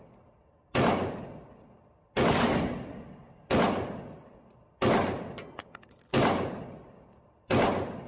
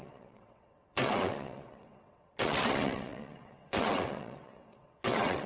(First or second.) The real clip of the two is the first